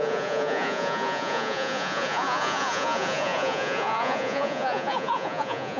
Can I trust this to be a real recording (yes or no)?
no